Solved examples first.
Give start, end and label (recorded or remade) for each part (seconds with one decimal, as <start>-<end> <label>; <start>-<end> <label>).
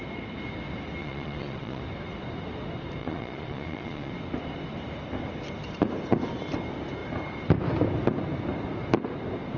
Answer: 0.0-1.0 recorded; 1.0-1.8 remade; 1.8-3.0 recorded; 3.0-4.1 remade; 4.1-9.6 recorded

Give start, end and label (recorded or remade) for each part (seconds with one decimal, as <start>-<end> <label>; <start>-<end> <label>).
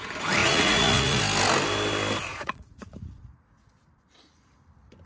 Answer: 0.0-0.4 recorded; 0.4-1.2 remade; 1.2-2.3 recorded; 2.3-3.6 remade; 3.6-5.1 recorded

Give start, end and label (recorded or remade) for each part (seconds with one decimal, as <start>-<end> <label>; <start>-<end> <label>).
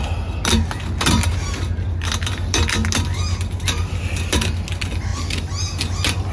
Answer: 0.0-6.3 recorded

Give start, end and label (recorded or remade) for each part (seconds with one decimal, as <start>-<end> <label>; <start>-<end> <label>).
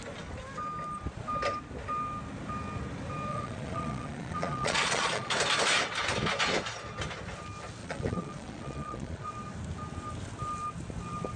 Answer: 0.0-3.3 recorded; 3.3-5.3 remade; 5.3-7.8 recorded; 7.8-9.3 remade; 9.3-11.4 recorded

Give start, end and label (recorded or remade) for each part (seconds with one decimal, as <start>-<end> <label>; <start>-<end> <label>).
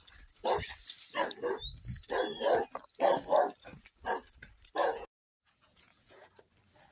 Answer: 0.0-4.8 recorded; 4.8-6.3 remade; 6.3-6.9 recorded